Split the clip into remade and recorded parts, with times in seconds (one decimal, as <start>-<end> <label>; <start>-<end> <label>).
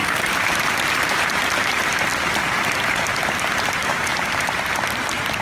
0.0-3.8 recorded; 3.8-4.8 remade; 4.8-5.4 recorded